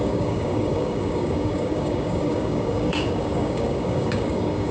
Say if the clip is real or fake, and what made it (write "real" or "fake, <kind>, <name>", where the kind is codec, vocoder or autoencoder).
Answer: fake, codec, DAC